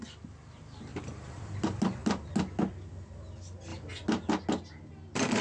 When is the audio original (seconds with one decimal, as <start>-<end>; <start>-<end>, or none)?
0.0-0.9; 1.4-5.4